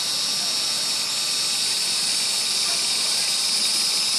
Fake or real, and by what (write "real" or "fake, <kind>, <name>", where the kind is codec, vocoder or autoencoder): real